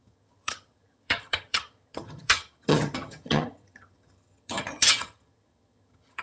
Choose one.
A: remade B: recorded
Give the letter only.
A